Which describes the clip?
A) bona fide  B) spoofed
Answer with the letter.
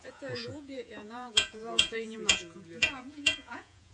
B